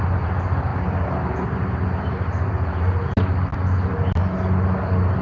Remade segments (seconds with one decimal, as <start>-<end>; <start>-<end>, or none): 0.7-3.0